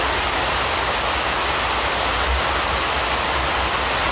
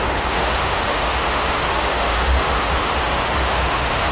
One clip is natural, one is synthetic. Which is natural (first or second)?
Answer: first